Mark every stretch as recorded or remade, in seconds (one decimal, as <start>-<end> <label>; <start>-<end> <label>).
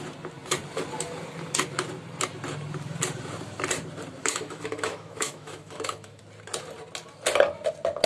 0.0-4.2 recorded; 4.2-6.2 remade; 6.2-8.1 recorded